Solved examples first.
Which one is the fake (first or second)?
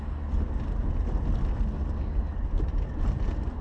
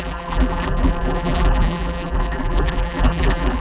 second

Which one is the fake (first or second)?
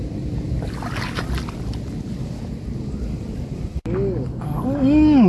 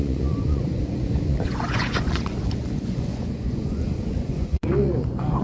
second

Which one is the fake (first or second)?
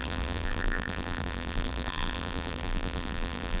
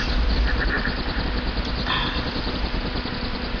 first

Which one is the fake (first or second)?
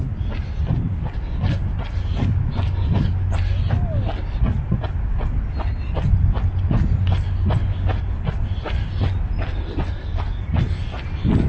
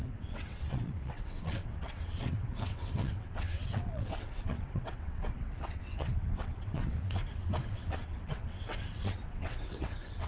second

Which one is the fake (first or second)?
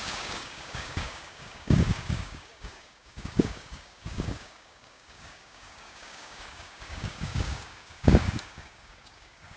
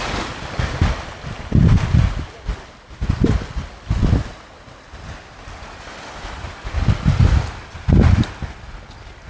first